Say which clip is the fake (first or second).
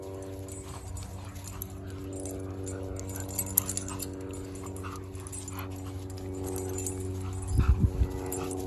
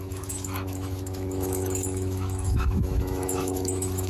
second